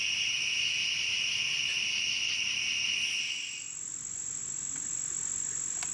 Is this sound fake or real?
real